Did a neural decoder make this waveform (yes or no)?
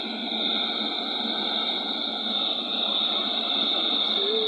no